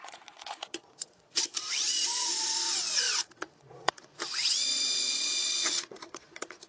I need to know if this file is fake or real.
fake